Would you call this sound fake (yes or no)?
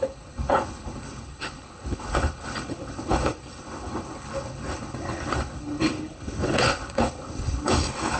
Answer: yes